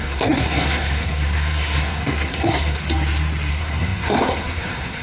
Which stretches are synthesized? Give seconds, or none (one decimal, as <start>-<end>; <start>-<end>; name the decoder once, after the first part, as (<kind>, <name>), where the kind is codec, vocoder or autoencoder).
0.0-2.8 (codec, SNAC); 3.5-5.0